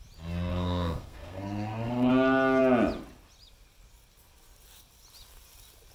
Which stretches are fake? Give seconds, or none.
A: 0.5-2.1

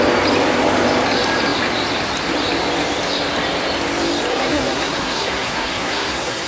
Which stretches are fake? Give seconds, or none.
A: 4.3-6.5

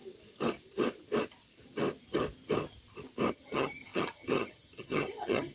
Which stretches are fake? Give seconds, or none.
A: 3.3-5.5

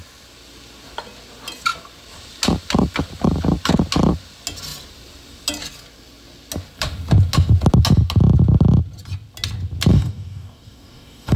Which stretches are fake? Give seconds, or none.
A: 9.9-11.4

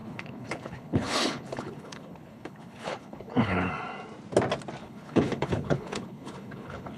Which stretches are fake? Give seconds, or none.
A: 0.0-3.7; 4.8-7.0